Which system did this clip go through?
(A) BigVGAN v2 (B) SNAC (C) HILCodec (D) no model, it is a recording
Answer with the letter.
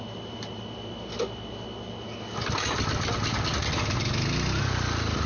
D